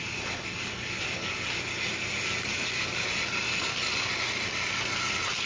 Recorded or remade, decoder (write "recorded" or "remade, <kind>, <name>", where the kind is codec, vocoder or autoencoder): recorded